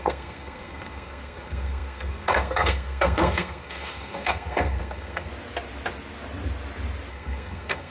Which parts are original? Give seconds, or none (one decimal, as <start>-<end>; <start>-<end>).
5.3-7.1